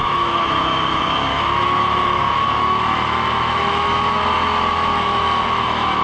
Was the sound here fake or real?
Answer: fake